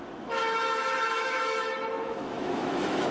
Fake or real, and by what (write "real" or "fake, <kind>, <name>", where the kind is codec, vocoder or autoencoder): fake, autoencoder, DAC-VAE